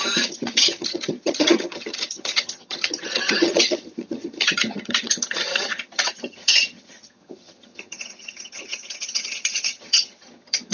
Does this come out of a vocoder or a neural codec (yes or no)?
yes